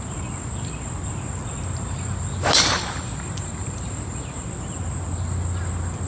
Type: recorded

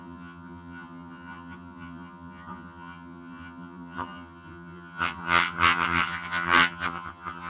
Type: remade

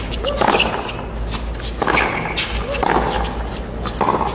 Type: recorded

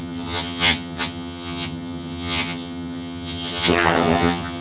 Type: remade